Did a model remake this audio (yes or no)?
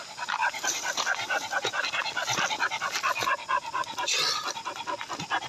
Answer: no